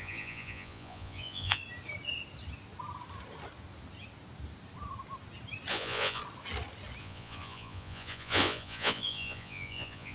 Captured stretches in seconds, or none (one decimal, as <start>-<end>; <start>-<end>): 1.6-5.7; 6.2-7.0